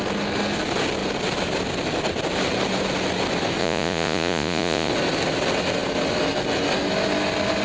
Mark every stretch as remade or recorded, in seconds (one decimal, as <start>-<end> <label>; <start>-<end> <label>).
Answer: 0.0-3.6 recorded; 3.6-4.9 remade; 4.9-7.6 recorded